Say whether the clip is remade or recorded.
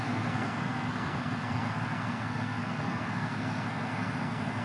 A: remade